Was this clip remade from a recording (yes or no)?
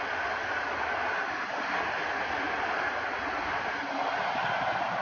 no